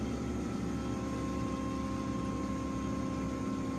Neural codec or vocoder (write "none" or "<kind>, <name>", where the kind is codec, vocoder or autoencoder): none